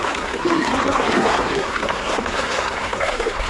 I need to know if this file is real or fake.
fake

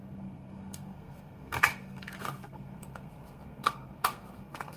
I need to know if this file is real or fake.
fake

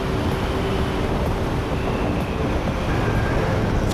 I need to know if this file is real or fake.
real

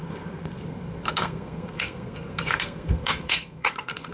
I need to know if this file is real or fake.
fake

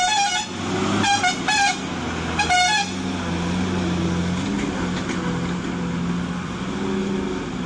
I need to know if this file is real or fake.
real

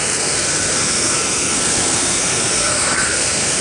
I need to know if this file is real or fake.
fake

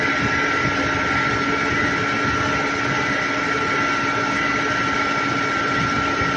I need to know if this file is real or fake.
real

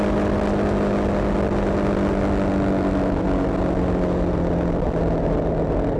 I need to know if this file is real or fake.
real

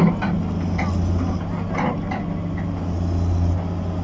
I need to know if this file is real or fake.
real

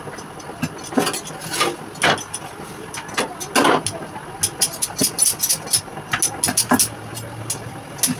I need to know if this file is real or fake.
real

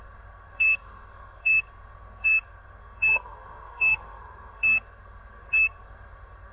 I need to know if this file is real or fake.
fake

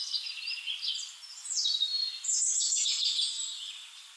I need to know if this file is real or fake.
real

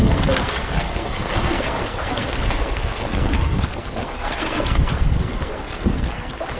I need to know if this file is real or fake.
fake